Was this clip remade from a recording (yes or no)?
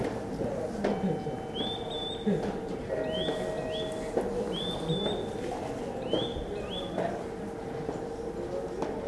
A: no